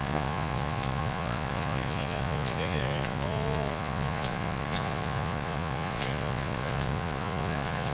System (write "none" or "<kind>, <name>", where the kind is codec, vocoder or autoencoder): vocoder, Vocos